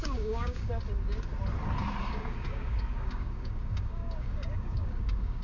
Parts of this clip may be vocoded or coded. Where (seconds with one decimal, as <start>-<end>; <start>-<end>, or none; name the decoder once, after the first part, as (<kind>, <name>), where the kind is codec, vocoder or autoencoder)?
0.0-0.7 (codec, DAC); 2.0-5.4